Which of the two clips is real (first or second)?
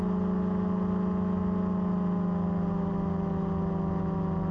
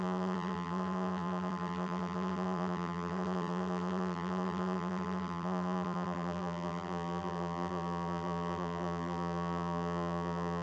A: first